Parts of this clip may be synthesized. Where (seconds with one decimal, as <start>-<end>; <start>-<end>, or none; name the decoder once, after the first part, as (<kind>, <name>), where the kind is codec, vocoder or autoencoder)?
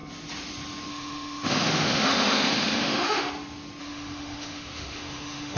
0.9-3.3 (autoencoder, DAC-VAE); 3.8-5.6